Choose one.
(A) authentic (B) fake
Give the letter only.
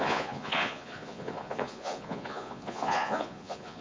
B